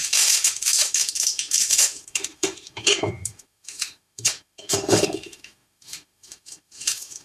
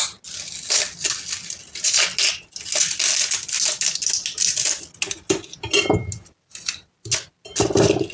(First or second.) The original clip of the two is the second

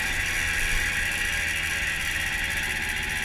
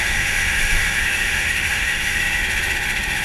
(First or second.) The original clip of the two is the first